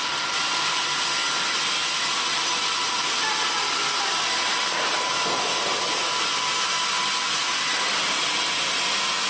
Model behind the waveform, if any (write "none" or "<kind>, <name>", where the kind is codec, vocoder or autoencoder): none